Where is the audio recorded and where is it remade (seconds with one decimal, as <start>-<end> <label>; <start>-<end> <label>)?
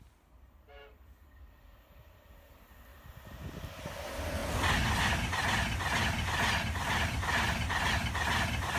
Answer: 0.0-2.9 recorded; 2.9-3.8 remade; 3.8-8.8 recorded